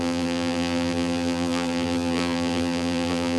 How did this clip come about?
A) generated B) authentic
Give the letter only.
A